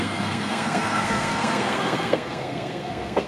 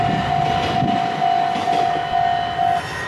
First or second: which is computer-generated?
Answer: first